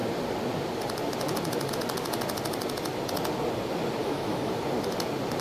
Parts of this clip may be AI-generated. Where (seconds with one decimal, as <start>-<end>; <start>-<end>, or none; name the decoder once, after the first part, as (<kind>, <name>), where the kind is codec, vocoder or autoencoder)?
4.0-4.5 (autoencoder, DAC-VAE)